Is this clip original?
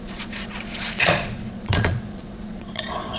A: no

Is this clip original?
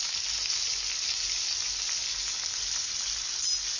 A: yes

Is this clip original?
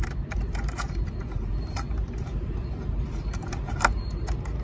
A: no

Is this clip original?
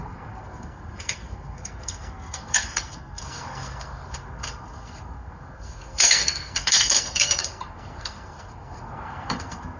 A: no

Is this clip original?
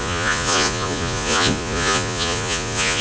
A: no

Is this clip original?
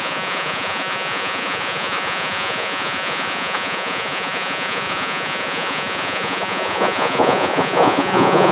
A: no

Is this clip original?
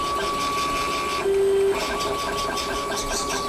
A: yes